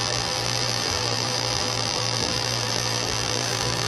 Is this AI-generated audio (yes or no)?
yes